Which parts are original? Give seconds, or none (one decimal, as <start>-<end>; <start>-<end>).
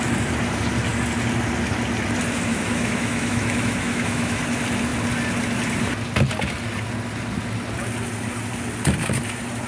0.0-2.5; 4.4-9.7